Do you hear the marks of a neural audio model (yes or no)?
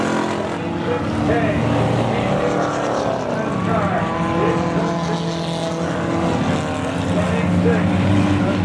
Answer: no